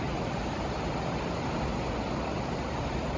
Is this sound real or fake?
real